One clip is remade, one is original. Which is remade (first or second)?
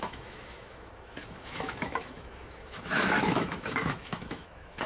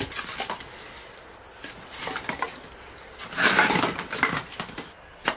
first